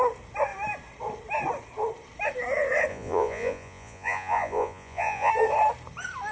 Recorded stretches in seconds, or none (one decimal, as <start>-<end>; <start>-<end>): 0.0-2.9; 5.3-6.3